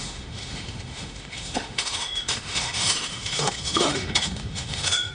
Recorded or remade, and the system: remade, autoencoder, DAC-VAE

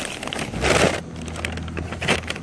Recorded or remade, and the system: recorded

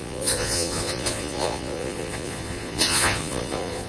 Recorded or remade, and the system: remade, vocoder, Vocos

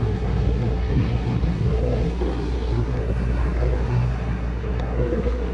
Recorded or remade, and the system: remade, codec, SNAC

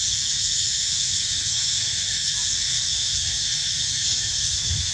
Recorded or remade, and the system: remade, codec, SNAC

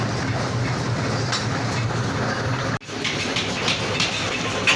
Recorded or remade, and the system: recorded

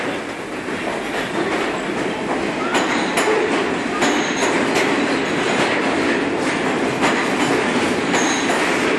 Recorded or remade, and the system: recorded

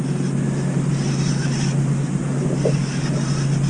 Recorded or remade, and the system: recorded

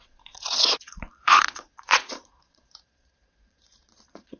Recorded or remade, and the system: remade, vocoder, Vocos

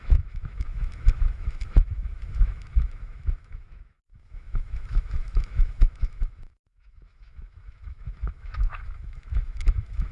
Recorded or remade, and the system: remade, autoencoder, DAC-VAE